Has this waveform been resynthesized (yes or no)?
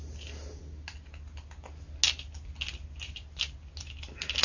no